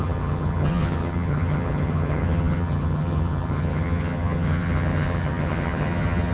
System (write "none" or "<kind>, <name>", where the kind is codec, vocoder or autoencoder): vocoder, HiFi-GAN